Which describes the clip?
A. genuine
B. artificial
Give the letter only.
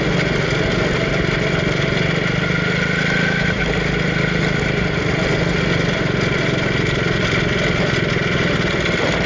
A